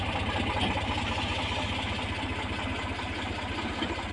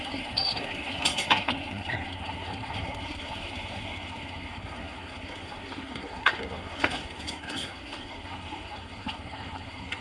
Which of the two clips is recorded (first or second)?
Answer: first